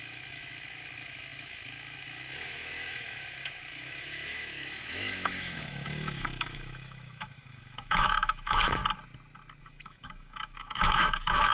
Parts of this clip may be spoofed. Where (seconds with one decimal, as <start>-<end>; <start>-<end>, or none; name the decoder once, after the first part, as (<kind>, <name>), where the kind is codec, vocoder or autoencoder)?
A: 0.0-8.8 (autoencoder, DAC-VAE); 9.6-11.5

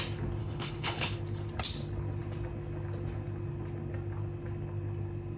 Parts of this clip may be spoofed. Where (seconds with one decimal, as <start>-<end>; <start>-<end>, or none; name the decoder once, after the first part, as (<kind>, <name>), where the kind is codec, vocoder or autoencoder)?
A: 0.4-1.2 (codec, HILCodec)

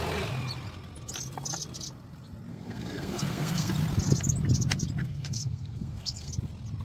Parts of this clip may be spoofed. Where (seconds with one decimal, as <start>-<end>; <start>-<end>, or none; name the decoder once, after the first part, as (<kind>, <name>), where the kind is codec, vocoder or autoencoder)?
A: 2.5-3.7 (codec, SNAC); 5.0-6.3

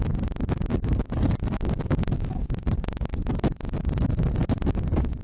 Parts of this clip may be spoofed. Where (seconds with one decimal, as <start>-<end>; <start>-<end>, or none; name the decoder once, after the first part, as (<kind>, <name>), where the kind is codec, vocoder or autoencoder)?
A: 0.7-3.8 (codec, DAC)